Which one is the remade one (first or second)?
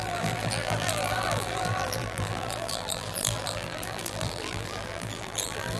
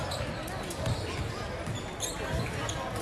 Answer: first